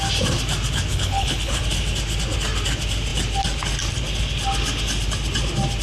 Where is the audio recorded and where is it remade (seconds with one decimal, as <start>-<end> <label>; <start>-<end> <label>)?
0.0-0.9 recorded; 0.9-1.6 remade; 1.6-5.8 recorded